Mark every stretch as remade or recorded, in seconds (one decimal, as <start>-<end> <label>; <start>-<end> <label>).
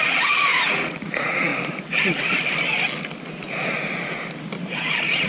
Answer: 0.0-1.5 remade; 1.5-4.7 recorded; 4.7-5.3 remade